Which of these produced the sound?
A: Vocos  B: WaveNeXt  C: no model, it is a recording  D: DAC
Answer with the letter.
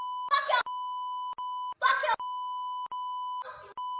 C